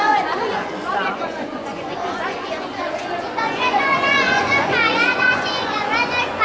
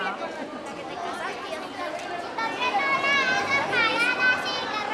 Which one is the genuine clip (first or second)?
second